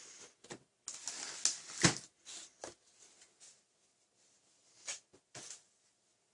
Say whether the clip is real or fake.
real